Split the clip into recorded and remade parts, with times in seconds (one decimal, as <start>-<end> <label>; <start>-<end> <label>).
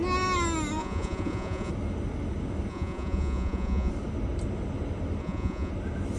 0.0-0.8 recorded; 0.8-1.7 remade; 1.7-2.7 recorded; 2.7-3.9 remade; 3.9-5.2 recorded; 5.2-5.7 remade; 5.7-6.2 recorded